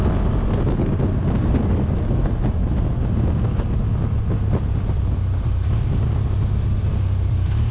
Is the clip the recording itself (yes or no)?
yes